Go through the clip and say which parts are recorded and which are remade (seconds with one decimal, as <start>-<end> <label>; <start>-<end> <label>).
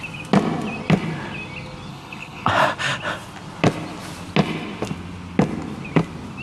0.0-1.9 recorded; 1.9-2.5 remade; 2.5-6.4 recorded